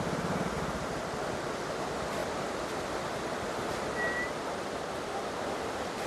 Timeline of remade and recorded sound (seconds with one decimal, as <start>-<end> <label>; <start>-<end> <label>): 0.0-6.1 recorded

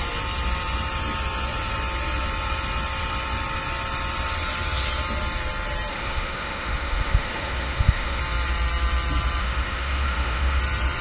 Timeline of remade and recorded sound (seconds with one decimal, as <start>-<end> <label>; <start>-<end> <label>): 0.0-5.9 recorded; 5.9-8.2 remade; 8.2-9.4 recorded; 9.4-10.6 remade; 10.6-11.0 recorded

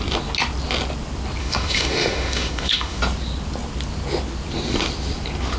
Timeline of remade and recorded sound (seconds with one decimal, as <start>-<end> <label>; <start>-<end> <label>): 0.0-1.4 recorded; 1.4-3.0 remade; 3.0-5.6 recorded

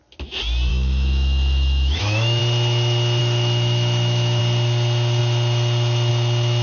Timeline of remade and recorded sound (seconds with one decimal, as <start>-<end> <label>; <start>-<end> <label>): 0.0-0.7 recorded; 0.7-2.4 remade; 2.4-3.2 recorded; 3.2-4.4 remade; 4.4-6.6 recorded

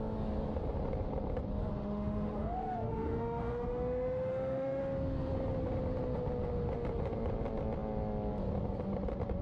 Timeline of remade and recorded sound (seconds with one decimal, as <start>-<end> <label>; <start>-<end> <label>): 0.0-1.7 recorded; 1.7-4.8 remade; 4.8-9.4 recorded

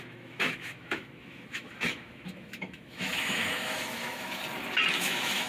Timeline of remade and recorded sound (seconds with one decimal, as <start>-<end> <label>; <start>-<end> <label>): 0.0-4.4 remade; 4.4-4.9 recorded; 4.9-5.5 remade

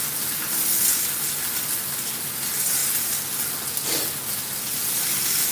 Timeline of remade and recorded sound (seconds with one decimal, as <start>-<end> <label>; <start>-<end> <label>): 0.0-5.5 recorded